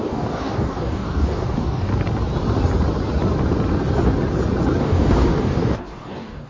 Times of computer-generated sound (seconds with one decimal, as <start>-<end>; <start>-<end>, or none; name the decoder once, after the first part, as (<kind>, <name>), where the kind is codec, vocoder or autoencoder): 0.0-1.9 (codec, DAC); 4.8-6.5